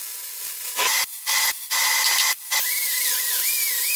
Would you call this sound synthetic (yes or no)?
no